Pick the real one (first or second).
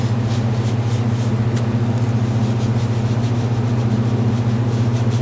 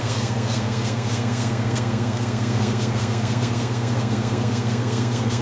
first